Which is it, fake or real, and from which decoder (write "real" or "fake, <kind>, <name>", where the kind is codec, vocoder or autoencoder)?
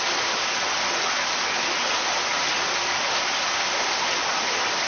real